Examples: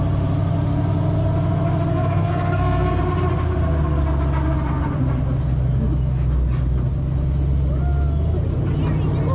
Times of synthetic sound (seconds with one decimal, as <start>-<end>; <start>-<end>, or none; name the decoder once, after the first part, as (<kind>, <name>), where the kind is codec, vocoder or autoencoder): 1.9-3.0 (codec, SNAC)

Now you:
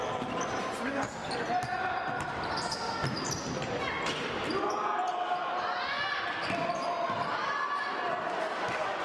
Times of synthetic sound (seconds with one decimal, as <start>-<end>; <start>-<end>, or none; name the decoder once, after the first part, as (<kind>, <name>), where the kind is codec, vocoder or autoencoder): none

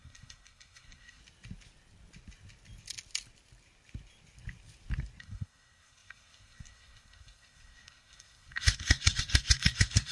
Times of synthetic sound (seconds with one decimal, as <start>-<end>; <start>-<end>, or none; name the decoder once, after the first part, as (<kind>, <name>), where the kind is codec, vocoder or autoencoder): 0.0-1.2 (codec, SNAC); 5.2-10.1

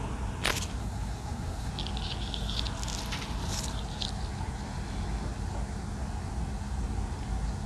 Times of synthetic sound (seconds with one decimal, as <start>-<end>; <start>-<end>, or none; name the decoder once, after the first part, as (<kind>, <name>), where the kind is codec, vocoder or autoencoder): 0.8-1.7 (codec, SNAC)

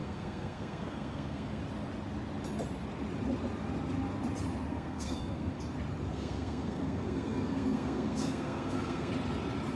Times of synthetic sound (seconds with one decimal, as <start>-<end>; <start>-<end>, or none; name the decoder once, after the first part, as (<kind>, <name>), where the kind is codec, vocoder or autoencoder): 0.0-1.6 (codec, SNAC); 4.7-5.6; 6.1-9.1